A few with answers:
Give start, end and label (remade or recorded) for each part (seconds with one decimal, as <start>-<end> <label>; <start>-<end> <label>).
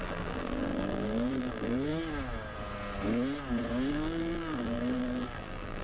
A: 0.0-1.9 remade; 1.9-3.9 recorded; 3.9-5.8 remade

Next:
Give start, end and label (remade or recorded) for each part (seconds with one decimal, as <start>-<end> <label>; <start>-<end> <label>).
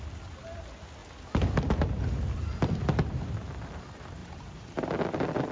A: 0.0-4.2 recorded; 4.2-4.9 remade; 4.9-5.5 recorded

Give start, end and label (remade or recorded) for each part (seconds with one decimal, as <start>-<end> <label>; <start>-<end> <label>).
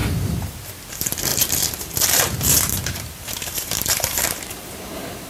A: 0.0-0.9 recorded; 0.9-5.3 remade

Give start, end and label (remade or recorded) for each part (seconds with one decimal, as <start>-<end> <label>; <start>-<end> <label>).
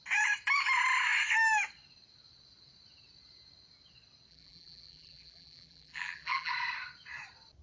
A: 0.0-4.3 recorded; 4.3-6.5 remade; 6.5-7.6 recorded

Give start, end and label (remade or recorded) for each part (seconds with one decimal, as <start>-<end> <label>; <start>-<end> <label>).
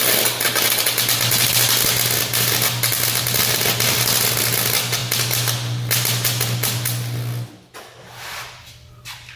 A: 0.0-9.4 recorded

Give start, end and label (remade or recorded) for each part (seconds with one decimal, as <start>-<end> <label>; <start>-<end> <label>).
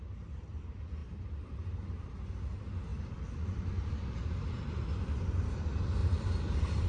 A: 0.0-1.0 recorded; 1.0-2.0 remade; 2.0-6.0 recorded; 6.0-6.9 remade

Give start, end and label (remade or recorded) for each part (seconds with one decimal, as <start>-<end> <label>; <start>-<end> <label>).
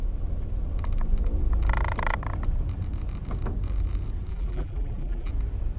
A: 0.0-4.3 recorded; 4.3-5.3 remade; 5.3-5.8 recorded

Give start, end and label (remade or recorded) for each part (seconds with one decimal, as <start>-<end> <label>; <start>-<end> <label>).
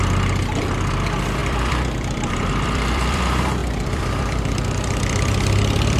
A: 0.0-1.4 recorded; 1.4-3.2 remade; 3.2-3.6 recorded; 3.6-6.0 remade